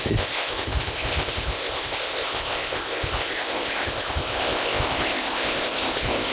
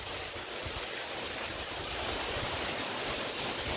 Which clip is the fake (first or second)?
first